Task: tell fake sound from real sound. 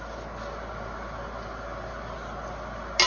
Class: real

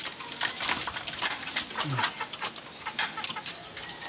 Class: real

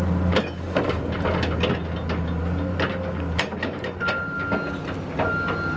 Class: real